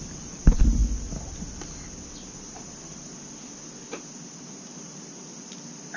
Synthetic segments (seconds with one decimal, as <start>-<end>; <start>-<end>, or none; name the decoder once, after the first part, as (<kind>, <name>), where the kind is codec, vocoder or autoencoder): none